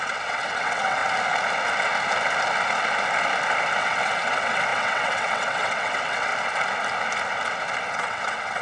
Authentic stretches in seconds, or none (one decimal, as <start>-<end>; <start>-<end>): 1.0-3.8; 6.3-7.8